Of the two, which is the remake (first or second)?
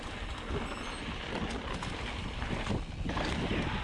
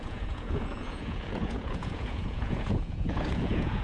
second